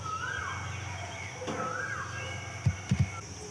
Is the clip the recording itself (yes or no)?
yes